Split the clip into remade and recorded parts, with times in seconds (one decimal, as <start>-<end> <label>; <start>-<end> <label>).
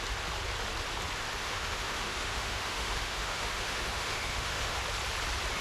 0.0-1.4 recorded; 1.4-4.8 remade; 4.8-5.6 recorded